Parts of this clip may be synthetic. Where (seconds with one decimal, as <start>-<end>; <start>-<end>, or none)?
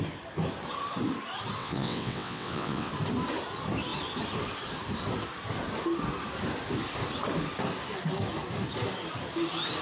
1.6-2.9